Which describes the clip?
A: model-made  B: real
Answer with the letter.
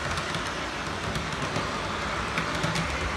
B